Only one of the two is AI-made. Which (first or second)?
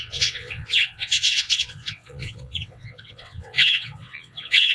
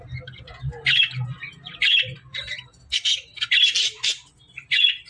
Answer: first